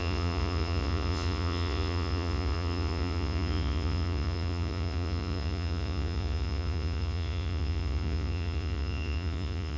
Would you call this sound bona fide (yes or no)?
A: no